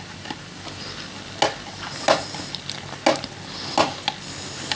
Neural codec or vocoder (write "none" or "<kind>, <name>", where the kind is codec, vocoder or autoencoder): none